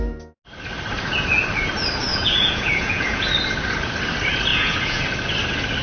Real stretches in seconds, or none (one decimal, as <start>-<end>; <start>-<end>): 0.0-2.1; 3.3-4.5; 5.0-5.8